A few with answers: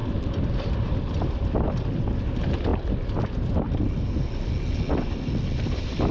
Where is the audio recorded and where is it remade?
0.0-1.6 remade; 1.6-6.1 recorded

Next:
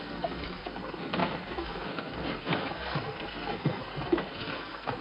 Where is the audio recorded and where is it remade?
0.0-5.0 remade

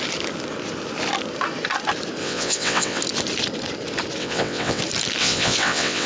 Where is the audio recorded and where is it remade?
0.0-2.2 recorded; 2.2-3.0 remade; 3.0-4.2 recorded; 4.2-4.8 remade; 4.8-5.2 recorded; 5.2-6.1 remade

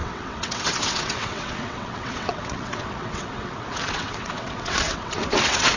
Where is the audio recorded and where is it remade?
0.0-5.8 remade

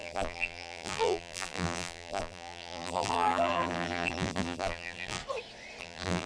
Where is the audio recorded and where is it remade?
0.0-5.2 remade; 5.2-5.8 recorded; 5.8-6.3 remade

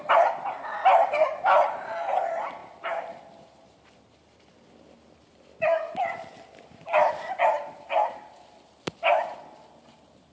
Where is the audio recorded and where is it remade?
0.0-2.6 recorded; 2.6-7.3 remade; 7.3-10.3 recorded